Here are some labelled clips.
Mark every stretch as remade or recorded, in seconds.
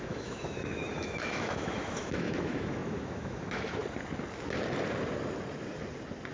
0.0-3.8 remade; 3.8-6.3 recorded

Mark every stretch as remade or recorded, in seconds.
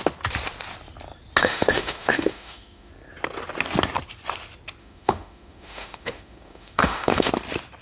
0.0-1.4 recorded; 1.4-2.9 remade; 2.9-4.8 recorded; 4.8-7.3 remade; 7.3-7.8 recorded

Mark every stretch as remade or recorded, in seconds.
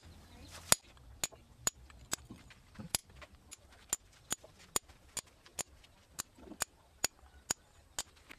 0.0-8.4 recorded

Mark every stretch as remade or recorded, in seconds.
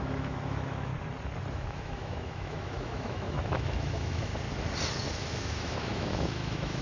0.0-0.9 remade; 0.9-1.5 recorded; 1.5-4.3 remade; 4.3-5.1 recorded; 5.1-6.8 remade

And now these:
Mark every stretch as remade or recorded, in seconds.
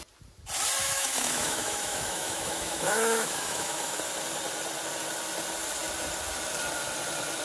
0.0-0.8 recorded; 0.8-4.0 remade; 4.0-7.4 recorded